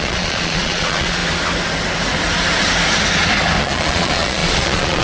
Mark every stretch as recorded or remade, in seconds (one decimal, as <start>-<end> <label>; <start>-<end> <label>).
0.0-1.2 remade; 1.2-3.6 recorded; 3.6-5.0 remade